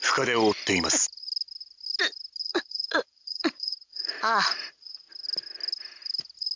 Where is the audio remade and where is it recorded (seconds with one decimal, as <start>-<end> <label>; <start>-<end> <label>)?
0.0-2.4 recorded; 2.4-5.1 remade; 5.1-6.6 recorded